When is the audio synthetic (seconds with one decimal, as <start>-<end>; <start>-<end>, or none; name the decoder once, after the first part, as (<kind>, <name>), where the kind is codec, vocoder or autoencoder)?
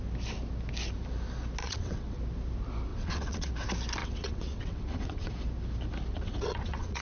1.6-2.2 (vocoder, WaveNeXt); 2.9-3.5; 4.0-5.3; 6.1-7.0